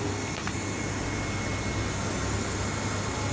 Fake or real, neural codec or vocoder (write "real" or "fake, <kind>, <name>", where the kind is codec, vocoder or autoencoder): real